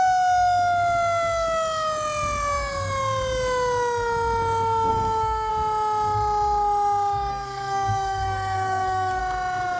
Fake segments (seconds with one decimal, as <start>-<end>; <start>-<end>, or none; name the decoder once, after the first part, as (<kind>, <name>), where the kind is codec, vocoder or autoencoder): 4.9-5.5 (codec, SNAC); 7.3-9.2